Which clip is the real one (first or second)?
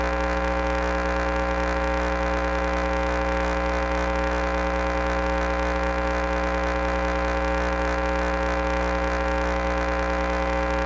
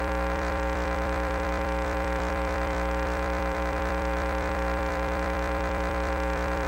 first